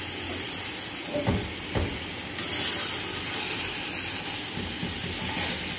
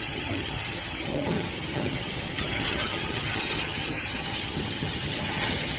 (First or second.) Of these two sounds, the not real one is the second